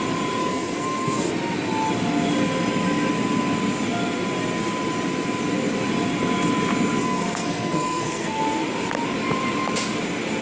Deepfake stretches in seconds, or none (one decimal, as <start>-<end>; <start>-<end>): 0.4-1.3; 7.0-8.4